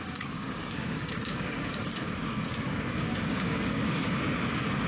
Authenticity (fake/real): fake